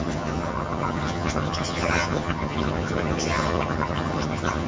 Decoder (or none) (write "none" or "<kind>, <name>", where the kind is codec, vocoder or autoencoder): vocoder, HiFi-GAN